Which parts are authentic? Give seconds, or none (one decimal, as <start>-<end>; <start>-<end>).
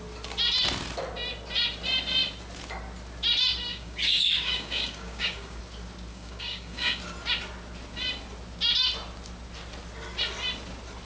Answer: 0.0-3.7; 5.6-6.1; 7.0-11.1